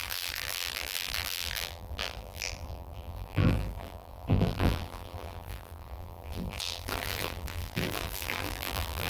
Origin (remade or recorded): remade